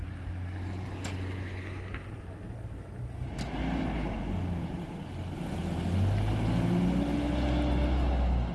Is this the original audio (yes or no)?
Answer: yes